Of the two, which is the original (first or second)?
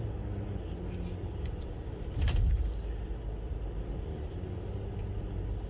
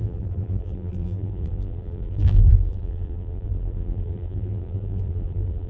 first